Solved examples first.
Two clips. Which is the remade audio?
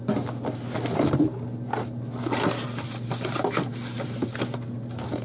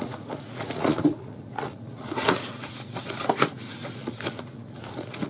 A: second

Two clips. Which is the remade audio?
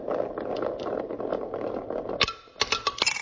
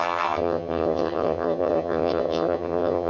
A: second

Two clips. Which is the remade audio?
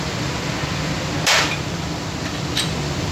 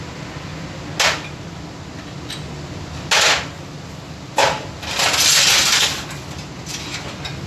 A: first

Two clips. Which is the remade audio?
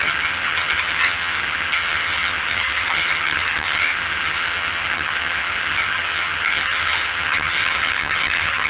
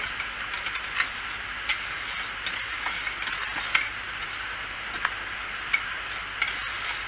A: first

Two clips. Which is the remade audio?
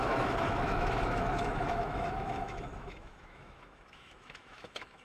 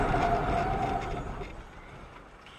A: first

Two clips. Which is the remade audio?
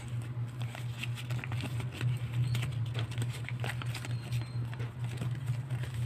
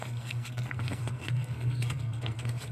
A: second